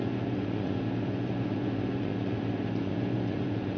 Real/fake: fake